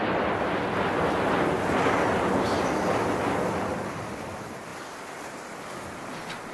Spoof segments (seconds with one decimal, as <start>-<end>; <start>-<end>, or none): none

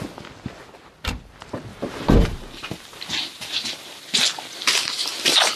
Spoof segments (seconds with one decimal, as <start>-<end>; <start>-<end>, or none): 1.7-4.0